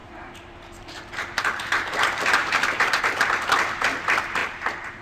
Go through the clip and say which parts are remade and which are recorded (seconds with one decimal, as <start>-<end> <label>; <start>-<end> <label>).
0.0-3.0 remade; 3.0-4.4 recorded; 4.4-5.0 remade